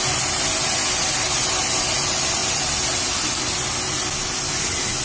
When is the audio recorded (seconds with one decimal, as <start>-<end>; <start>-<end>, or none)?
0.0-5.0